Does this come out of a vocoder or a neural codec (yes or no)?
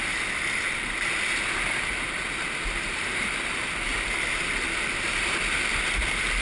no